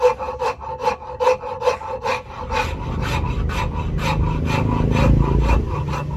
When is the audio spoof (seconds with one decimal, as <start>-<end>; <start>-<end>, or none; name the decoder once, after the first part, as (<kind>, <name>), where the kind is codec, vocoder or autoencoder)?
none